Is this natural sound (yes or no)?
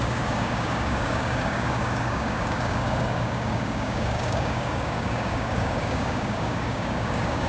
no